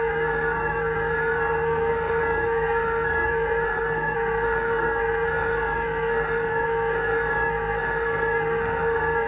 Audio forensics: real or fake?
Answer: fake